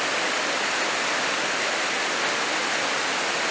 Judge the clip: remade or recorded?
recorded